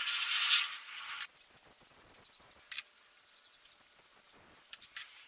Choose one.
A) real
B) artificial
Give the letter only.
A